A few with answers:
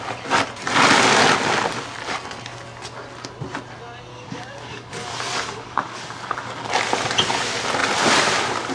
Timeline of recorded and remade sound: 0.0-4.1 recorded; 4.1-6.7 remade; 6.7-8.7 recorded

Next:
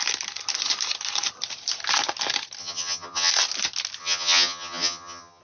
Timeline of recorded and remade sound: 0.0-2.6 recorded; 2.6-3.3 remade; 3.3-4.0 recorded; 4.0-5.4 remade

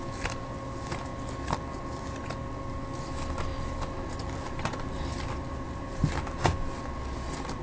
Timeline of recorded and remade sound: 0.0-3.5 recorded; 3.5-6.4 remade; 6.4-7.6 recorded

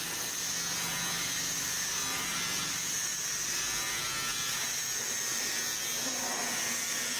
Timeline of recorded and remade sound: 0.0-7.2 recorded

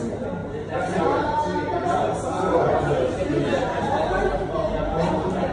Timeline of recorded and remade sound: 0.0-5.5 recorded